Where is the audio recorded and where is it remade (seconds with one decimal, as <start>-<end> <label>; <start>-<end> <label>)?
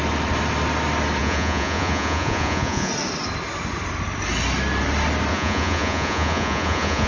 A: 0.0-1.2 recorded; 1.2-2.9 remade; 2.9-5.3 recorded; 5.3-7.1 remade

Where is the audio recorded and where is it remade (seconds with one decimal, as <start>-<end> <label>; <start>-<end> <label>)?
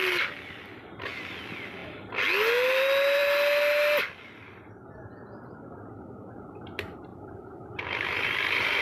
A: 0.0-7.1 recorded; 7.1-8.8 remade